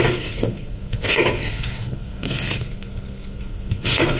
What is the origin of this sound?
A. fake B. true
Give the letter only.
A